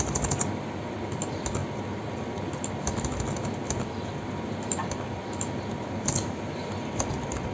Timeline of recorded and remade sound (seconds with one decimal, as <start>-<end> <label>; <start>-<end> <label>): 0.0-7.5 recorded